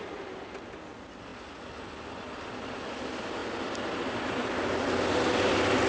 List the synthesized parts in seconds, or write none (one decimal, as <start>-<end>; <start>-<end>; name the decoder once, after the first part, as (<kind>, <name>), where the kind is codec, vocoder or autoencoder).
none